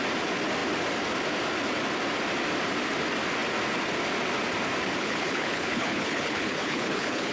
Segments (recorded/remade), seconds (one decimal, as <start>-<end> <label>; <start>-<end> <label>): 0.0-5.0 recorded; 5.0-7.3 remade